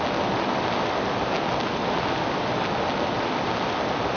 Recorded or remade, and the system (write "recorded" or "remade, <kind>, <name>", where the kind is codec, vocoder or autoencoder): recorded